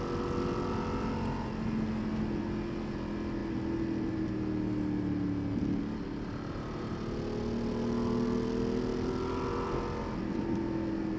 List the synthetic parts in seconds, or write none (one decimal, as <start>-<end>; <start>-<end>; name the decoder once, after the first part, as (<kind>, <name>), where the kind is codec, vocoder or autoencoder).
none